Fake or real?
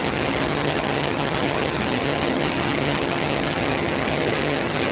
fake